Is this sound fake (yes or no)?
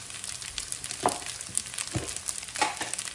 no